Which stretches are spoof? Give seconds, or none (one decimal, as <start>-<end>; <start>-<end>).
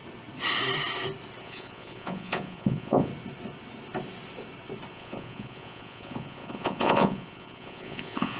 1.4-3.1; 4.9-8.4